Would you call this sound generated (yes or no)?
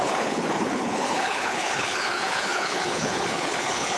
yes